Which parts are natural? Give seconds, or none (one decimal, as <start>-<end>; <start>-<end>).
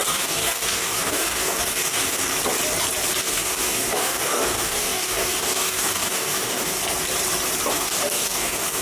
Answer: 2.3-3.2; 6.8-7.7